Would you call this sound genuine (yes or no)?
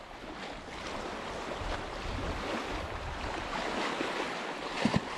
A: yes